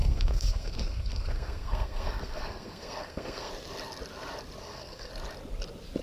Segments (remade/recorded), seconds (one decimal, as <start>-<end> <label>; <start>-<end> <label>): 0.0-3.5 remade; 3.5-4.6 recorded; 4.6-5.1 remade; 5.1-6.0 recorded